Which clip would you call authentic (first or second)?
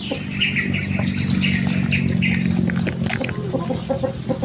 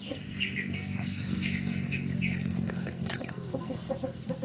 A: first